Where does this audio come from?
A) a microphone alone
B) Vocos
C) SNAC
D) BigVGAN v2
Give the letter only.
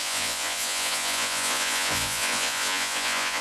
B